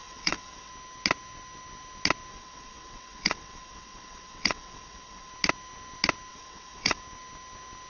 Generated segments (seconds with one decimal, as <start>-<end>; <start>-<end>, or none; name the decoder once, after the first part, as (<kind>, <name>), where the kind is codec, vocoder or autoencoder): 0.0-0.7 (vocoder, WaveNeXt); 2.3-5.3; 6.3-7.0